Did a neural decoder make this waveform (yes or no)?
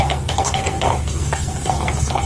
yes